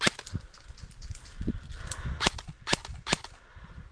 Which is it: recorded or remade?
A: recorded